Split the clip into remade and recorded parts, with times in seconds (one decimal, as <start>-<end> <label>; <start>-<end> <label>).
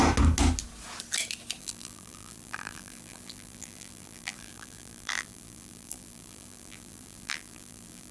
0.0-1.6 recorded; 1.6-8.1 remade